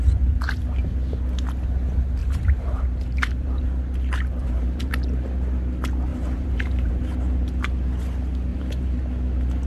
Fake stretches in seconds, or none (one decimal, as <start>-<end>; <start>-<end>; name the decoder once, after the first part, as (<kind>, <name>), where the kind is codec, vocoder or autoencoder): 2.2-3.6 (vocoder, BigVGAN v2); 4.4-4.9; 6.1-6.9; 8.5-9.0